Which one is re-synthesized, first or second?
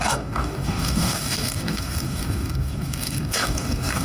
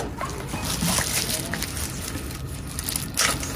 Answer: first